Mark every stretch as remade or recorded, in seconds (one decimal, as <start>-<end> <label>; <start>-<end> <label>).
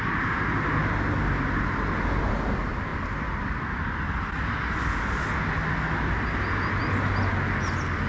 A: 0.0-8.1 recorded